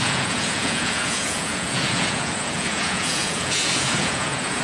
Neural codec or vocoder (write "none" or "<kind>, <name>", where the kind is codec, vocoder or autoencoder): vocoder, Vocos